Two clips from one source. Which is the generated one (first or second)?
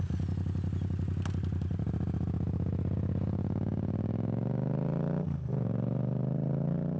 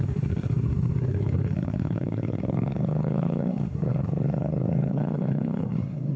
second